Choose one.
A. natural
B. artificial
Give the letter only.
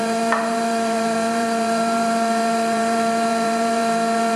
B